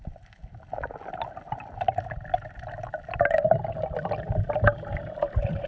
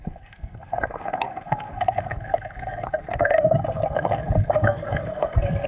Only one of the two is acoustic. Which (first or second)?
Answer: first